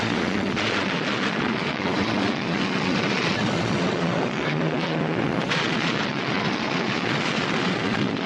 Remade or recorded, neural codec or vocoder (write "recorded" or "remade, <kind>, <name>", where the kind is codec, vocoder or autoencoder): remade, vocoder, Vocos